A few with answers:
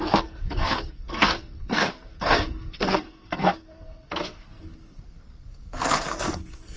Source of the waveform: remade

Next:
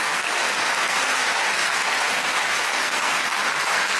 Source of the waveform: remade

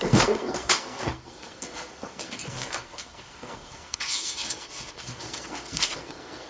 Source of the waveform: remade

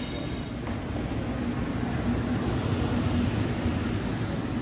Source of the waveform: recorded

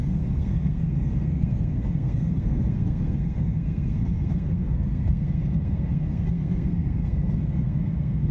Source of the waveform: remade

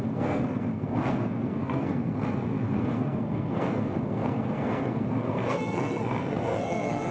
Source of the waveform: remade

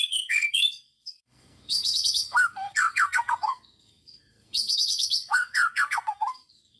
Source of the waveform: remade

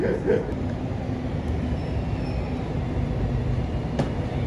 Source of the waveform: recorded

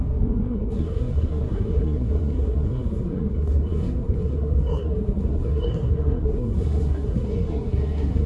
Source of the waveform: remade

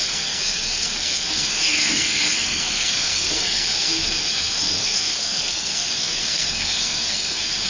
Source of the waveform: remade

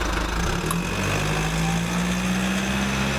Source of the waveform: recorded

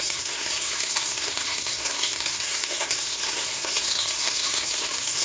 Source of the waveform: remade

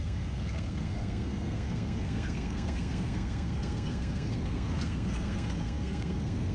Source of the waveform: remade